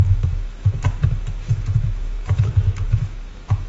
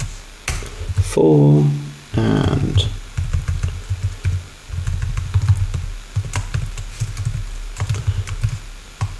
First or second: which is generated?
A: first